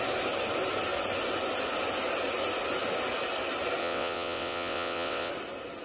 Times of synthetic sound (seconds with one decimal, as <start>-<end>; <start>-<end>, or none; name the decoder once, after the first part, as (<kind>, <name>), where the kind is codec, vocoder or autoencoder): 3.8-5.3 (vocoder, WaveNeXt)